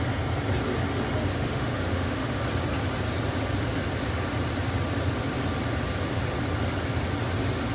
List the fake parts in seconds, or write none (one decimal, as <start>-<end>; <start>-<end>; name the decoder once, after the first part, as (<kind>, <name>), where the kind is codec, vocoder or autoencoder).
1.3-2.4 (autoencoder, DAC-VAE)